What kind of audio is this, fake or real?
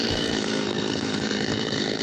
fake